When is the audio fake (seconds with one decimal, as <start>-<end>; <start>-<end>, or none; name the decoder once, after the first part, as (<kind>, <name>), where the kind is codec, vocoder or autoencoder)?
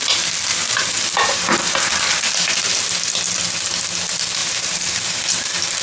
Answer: 0.5-2.0 (vocoder, BigVGAN v2); 4.4-5.1